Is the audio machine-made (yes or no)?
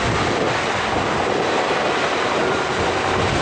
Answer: no